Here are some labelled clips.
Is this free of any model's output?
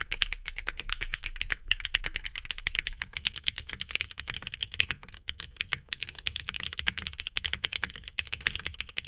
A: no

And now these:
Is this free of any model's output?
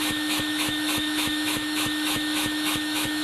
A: no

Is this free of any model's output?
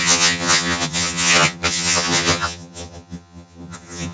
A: no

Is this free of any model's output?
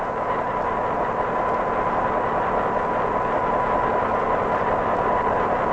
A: yes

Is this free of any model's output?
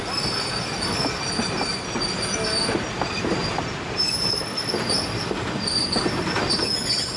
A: yes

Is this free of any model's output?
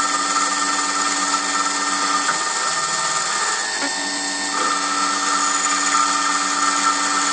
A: yes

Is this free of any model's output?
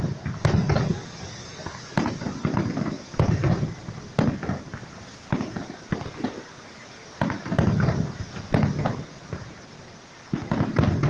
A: yes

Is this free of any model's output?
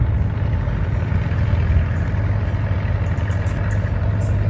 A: yes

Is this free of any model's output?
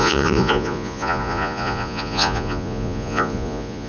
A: no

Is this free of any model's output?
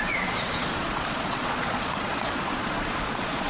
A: no